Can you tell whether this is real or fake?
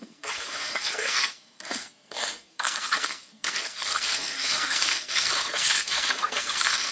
fake